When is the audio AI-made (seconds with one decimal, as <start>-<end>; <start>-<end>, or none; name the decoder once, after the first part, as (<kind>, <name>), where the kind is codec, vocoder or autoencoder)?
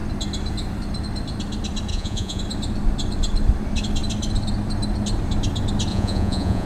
1.9-2.4 (vocoder, Vocos); 5.9-6.7